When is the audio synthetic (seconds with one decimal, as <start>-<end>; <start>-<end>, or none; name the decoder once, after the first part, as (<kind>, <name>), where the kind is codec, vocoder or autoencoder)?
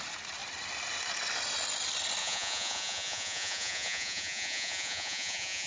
2.2-5.7 (vocoder, Vocos)